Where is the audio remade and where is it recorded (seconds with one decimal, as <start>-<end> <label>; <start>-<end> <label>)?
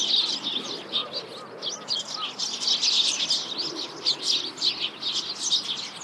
0.0-6.0 recorded